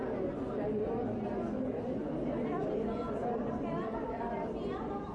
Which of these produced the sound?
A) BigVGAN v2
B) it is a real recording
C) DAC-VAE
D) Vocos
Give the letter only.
B